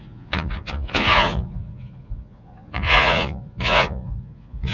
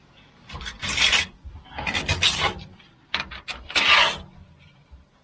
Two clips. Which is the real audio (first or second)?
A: second